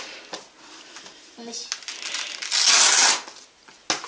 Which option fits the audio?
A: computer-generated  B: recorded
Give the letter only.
B